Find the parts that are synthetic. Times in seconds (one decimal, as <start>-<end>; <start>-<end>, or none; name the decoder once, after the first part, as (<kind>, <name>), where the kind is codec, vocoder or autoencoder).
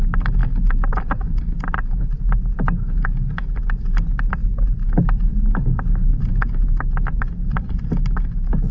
none